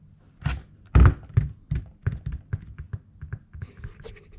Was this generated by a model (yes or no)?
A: no